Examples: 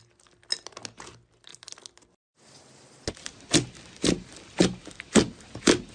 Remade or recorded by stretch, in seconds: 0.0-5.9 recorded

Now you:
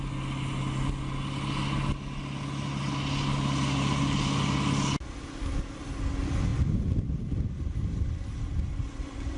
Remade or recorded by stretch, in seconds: 0.0-9.4 recorded